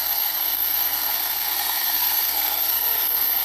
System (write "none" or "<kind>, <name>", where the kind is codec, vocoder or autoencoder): codec, SNAC